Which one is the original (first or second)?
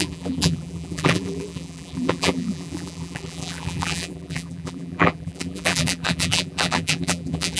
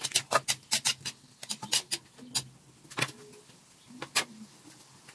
second